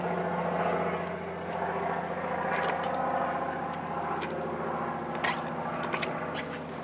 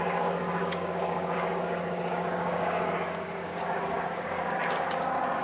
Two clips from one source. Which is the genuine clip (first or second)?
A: first